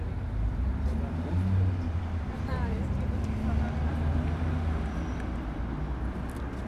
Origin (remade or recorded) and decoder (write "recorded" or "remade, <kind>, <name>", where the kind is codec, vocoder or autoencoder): recorded